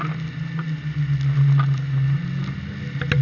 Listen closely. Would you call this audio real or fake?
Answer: real